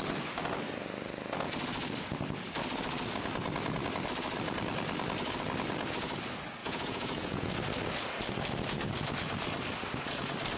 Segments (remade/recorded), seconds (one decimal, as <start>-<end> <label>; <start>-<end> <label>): 0.0-6.6 recorded; 6.6-7.5 remade; 7.5-10.6 recorded